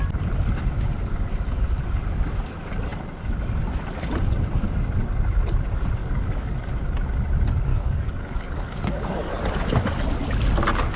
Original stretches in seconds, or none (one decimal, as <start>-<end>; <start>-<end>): 0.0-6.0; 6.7-7.7; 9.3-11.0